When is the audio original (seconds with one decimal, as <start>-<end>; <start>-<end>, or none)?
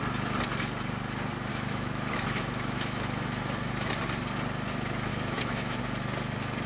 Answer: 0.0-1.5; 3.9-5.1; 5.8-6.7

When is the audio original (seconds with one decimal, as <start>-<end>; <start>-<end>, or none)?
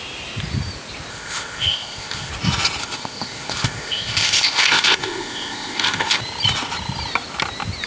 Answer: 0.0-1.1; 2.3-2.8; 6.2-7.9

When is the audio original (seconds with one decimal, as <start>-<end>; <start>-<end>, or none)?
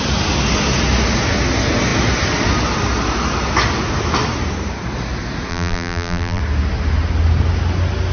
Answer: 0.0-5.5; 6.4-8.1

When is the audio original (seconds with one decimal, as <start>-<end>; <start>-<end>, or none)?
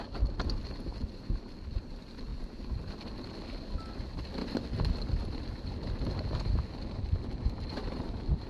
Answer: 0.0-8.5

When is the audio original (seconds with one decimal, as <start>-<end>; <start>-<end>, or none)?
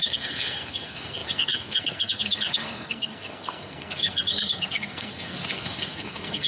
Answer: none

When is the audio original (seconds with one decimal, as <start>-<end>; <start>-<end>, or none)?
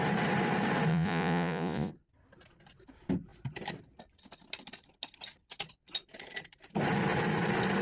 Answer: 0.0-0.9; 1.9-7.8